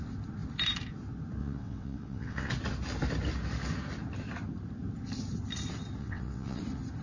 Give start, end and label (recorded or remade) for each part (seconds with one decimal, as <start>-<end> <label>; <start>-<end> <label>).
0.0-1.4 recorded; 1.4-2.5 remade; 2.5-6.0 recorded; 6.0-6.6 remade; 6.6-7.0 recorded